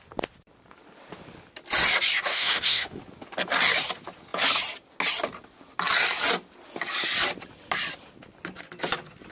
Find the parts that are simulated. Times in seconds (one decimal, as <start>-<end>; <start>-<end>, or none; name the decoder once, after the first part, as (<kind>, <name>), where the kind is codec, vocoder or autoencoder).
2.3-3.0 (autoencoder, DAC-VAE)